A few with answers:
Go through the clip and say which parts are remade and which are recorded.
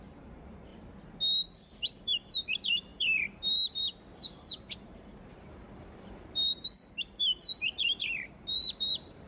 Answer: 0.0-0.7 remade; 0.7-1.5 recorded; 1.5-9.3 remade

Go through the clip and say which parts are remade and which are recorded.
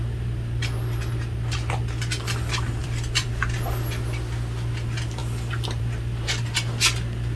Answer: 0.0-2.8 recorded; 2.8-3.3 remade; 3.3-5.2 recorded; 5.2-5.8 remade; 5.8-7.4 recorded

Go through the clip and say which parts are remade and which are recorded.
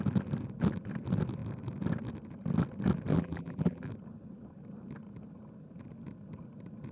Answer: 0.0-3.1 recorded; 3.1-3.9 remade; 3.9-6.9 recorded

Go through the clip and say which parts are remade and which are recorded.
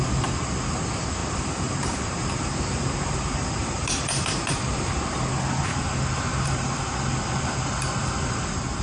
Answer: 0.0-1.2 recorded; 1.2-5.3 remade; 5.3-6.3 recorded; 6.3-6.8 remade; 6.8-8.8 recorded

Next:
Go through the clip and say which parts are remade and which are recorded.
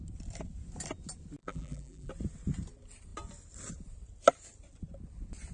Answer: 0.0-1.4 recorded; 1.4-2.1 remade; 2.1-5.5 recorded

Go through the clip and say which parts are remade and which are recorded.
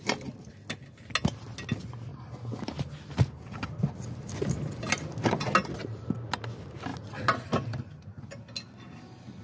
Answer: 0.0-9.4 recorded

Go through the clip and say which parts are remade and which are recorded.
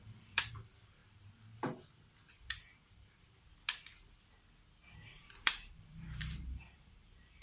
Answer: 0.0-1.0 remade; 1.0-2.3 recorded; 2.3-3.5 remade; 3.5-5.3 recorded; 5.3-7.4 remade